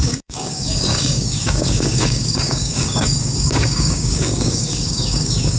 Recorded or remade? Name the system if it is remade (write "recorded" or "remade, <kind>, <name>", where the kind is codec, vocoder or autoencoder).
remade, codec, DAC